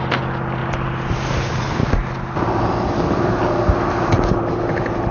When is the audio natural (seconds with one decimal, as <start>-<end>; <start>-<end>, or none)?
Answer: 0.0-5.1